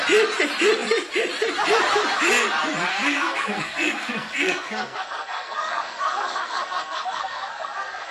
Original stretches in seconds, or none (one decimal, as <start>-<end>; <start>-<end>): 0.0-2.9